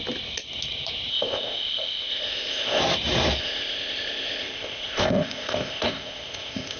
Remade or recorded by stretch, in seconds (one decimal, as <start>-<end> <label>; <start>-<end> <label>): 0.0-1.1 recorded; 1.1-2.8 remade; 2.8-3.4 recorded; 3.4-6.8 remade